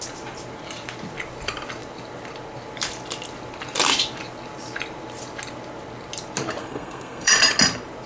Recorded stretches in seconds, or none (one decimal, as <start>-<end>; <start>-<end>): 0.0-6.6; 7.3-8.1